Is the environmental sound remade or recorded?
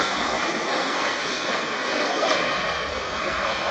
remade